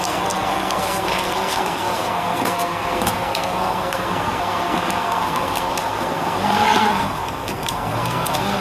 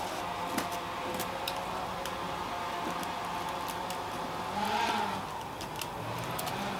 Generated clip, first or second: first